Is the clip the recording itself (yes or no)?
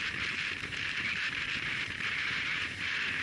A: no